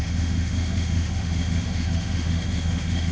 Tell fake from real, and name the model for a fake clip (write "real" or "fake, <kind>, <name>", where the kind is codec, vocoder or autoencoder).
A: fake, autoencoder, DAC-VAE